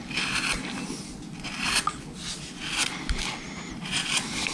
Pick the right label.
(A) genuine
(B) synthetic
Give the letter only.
A